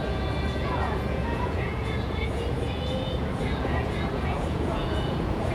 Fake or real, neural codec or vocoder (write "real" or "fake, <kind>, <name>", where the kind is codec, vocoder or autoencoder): fake, vocoder, Vocos